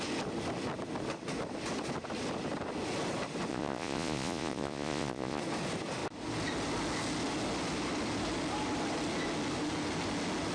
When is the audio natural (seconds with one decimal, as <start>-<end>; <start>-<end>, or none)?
0.0-3.5; 5.4-10.5